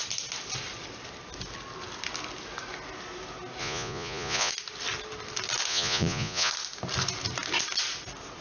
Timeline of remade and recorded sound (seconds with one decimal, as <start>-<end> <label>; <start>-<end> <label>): 0.0-3.6 recorded; 3.6-4.5 remade; 4.5-5.7 recorded; 5.7-6.5 remade; 6.5-8.4 recorded

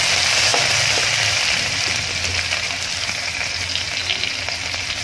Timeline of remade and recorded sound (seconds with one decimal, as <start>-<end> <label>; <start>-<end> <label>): 0.0-5.0 recorded

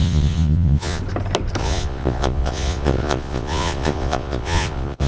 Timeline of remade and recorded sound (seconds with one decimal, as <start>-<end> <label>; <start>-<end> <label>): 0.0-1.0 remade; 1.0-1.6 recorded; 1.6-5.1 remade

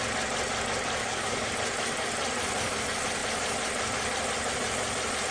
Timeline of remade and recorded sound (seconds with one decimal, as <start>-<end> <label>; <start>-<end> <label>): 0.0-1.0 recorded; 1.0-1.5 remade; 1.5-5.3 recorded

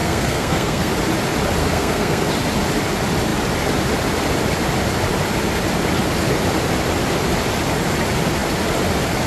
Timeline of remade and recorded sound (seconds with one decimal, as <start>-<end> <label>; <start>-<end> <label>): 0.0-0.9 remade; 0.9-1.6 recorded; 1.6-2.3 remade; 2.3-9.3 recorded

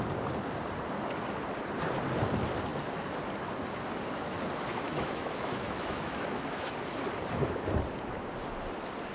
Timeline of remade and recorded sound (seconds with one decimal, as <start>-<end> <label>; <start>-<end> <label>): 0.0-4.7 recorded; 4.7-6.7 remade; 6.7-9.1 recorded